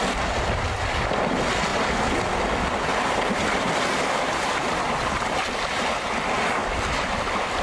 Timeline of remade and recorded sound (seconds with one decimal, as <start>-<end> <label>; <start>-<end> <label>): 0.0-7.6 recorded